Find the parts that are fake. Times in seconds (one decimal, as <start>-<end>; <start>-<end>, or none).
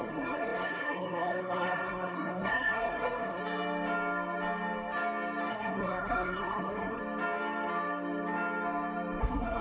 0.0-3.4; 5.5-7.0; 9.2-9.6